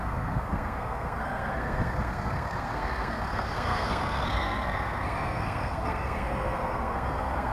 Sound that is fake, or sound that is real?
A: fake